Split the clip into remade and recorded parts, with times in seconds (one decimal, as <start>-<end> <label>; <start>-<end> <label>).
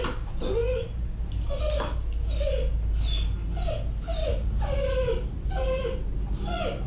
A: 0.0-4.2 recorded; 4.2-5.8 remade; 5.8-6.9 recorded